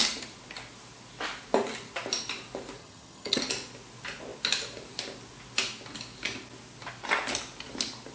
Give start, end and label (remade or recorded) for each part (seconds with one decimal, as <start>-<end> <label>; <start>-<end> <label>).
0.0-2.8 recorded; 2.8-3.4 remade; 3.4-8.1 recorded